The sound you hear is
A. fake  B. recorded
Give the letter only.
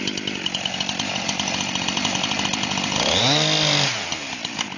B